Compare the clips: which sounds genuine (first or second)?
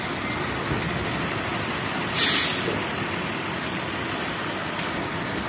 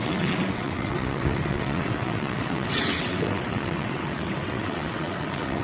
first